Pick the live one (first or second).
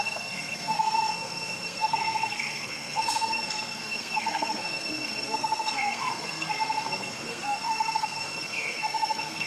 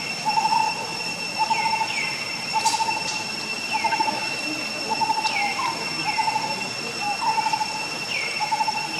second